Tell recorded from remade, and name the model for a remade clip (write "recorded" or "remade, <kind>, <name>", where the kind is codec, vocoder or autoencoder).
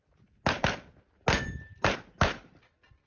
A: recorded